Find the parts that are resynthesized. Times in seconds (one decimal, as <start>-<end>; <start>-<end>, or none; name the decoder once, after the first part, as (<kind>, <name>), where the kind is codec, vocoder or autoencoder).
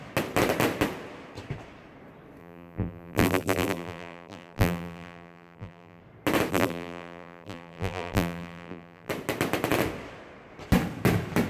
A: 2.4-6.0 (vocoder, BigVGAN v2); 6.5-9.1